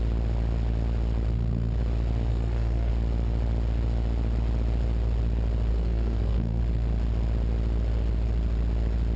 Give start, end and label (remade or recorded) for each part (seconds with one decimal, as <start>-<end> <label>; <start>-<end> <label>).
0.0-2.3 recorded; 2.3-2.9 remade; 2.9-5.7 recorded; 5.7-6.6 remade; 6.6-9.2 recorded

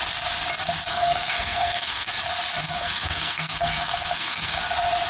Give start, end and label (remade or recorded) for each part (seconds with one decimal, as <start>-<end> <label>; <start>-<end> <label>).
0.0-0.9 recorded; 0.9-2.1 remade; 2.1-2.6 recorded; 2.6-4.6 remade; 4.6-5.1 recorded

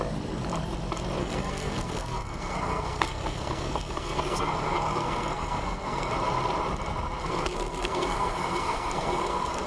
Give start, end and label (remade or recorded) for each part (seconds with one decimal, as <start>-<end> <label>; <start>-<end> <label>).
0.0-1.2 recorded; 1.2-6.1 remade; 6.1-7.2 recorded; 7.2-9.7 remade

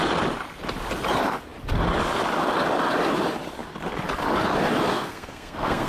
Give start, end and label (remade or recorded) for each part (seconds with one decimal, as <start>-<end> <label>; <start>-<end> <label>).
0.0-4.9 recorded; 4.9-5.9 remade